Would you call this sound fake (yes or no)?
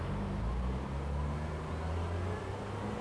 no